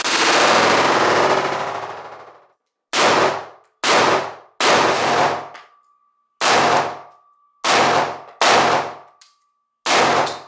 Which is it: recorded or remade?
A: recorded